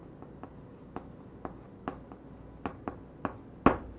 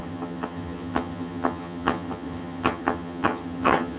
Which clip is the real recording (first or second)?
first